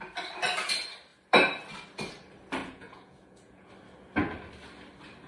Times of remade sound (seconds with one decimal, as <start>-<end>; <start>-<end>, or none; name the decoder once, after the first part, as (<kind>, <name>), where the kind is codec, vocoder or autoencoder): 2.6-3.7 (vocoder, Vocos)